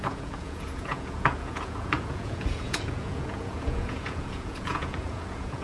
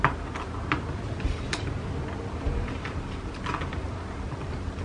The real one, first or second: second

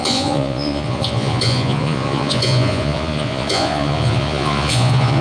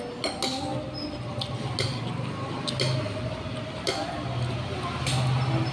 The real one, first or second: second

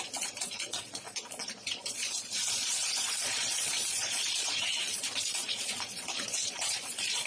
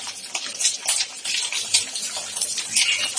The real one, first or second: second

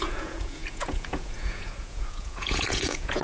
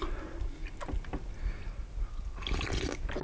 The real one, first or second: second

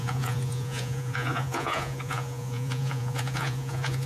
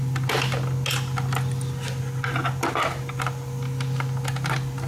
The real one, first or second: second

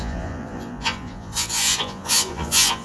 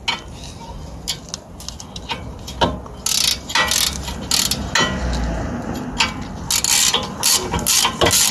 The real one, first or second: second